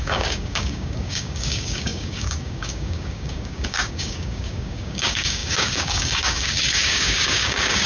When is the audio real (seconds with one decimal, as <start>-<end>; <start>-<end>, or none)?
none